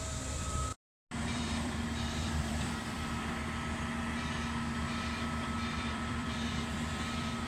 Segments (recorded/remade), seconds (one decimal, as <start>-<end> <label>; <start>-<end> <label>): 0.0-0.7 remade; 0.7-1.3 recorded; 1.3-3.4 remade; 3.4-5.8 recorded; 5.8-7.5 remade